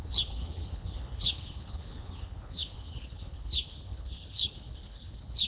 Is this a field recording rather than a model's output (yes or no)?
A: no